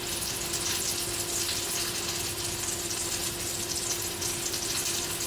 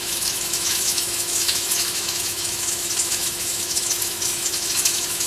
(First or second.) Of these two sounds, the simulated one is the second